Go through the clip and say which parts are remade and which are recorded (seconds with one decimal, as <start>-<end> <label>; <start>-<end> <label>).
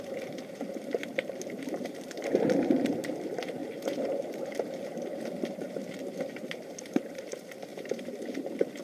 0.0-8.8 remade